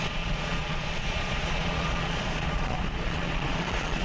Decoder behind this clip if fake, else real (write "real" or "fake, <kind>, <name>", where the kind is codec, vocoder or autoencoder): fake, vocoder, Vocos